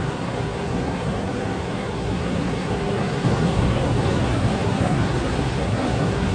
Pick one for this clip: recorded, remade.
remade